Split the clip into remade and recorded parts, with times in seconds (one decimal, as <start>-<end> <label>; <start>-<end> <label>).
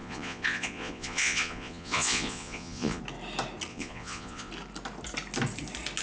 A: 0.0-3.0 remade; 3.0-3.7 recorded; 3.7-4.5 remade; 4.5-6.0 recorded